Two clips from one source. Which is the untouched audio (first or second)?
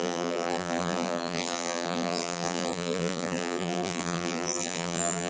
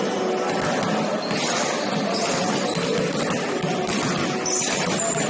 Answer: second